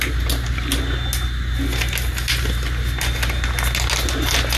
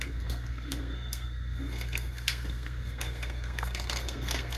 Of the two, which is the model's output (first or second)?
second